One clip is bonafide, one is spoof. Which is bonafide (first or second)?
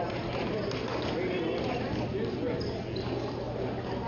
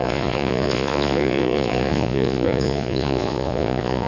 first